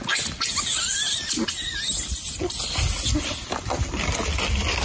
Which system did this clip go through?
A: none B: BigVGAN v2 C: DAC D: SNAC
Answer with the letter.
A